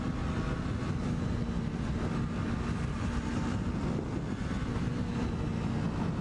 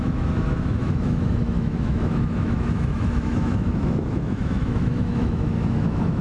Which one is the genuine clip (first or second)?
first